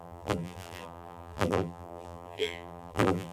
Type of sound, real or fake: fake